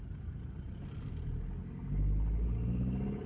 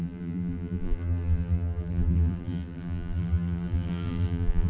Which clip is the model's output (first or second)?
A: second